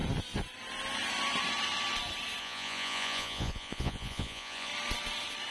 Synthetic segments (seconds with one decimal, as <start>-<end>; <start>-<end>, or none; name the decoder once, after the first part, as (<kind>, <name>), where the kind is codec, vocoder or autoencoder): 2.4-4.7 (vocoder, Vocos)